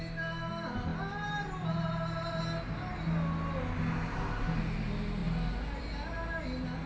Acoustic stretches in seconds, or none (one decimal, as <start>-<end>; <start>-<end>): 0.0-6.9

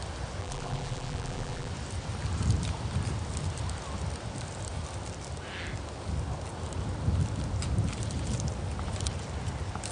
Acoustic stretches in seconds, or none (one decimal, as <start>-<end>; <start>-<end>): 0.0-0.4; 1.7-9.9

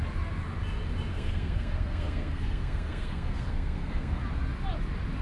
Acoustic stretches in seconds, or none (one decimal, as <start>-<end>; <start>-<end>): 0.0-1.1; 4.2-5.2

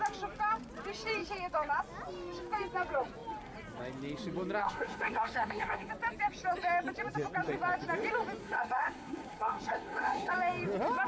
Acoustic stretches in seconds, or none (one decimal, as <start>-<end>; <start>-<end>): 0.0-4.6; 5.9-8.4; 10.3-11.1

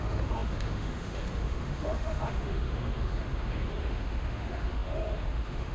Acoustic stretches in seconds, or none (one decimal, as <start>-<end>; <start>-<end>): none

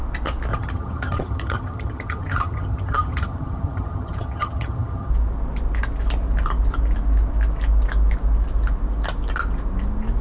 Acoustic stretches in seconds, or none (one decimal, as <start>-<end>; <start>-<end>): 0.0-0.5; 5.1-10.2